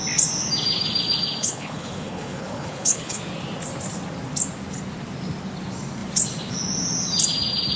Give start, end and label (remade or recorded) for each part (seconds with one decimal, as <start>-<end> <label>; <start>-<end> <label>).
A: 0.0-1.4 recorded; 1.4-3.2 remade; 3.2-7.8 recorded